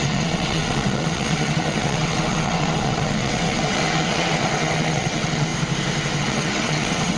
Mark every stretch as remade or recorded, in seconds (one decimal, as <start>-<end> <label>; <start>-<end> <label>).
0.0-5.5 remade; 5.5-6.2 recorded; 6.2-7.2 remade